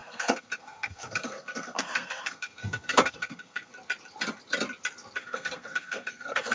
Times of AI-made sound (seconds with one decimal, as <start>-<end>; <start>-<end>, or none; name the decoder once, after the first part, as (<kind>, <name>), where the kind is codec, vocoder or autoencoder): 0.0-3.7 (codec, SNAC); 5.2-6.5